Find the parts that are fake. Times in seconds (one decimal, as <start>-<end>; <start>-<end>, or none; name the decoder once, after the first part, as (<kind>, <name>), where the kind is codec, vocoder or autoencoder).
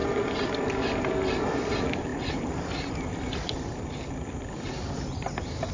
none